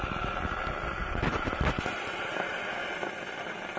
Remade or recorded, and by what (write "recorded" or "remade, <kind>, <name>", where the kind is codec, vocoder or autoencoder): recorded